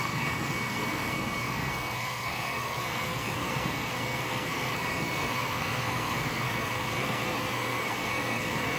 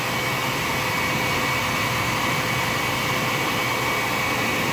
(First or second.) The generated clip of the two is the first